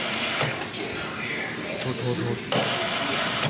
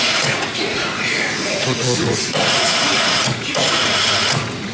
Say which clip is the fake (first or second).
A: second